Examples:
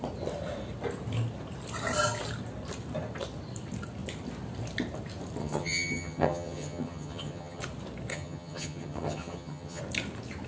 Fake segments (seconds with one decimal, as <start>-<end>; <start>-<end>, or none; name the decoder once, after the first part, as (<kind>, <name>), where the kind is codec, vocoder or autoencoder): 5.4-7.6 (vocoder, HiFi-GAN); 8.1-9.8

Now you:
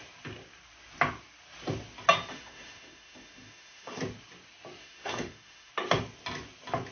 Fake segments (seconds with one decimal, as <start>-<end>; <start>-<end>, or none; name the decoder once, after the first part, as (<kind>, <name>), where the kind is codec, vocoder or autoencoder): 2.3-4.0 (autoencoder, DAC-VAE); 4.8-5.7

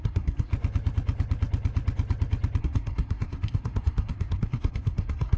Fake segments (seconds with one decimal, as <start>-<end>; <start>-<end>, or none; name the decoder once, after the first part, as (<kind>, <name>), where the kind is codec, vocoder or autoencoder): 0.0-0.5 (codec, SNAC); 2.6-5.4